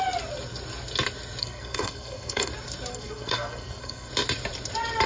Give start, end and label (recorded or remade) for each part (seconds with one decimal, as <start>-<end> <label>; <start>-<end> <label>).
0.0-1.4 recorded; 1.4-2.5 remade; 2.5-2.9 recorded; 2.9-4.1 remade; 4.1-5.1 recorded